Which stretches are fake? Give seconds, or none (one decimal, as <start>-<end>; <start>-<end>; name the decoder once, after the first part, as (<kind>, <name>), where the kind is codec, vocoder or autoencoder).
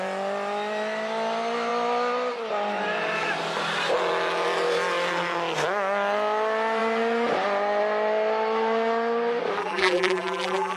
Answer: 9.6-10.8 (vocoder, BigVGAN v2)